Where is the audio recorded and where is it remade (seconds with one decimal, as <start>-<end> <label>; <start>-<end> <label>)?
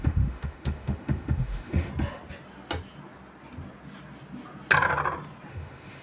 0.0-1.9 remade; 1.9-5.5 recorded; 5.5-6.0 remade